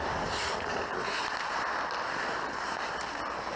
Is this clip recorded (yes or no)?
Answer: yes